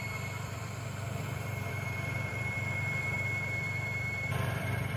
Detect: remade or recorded remade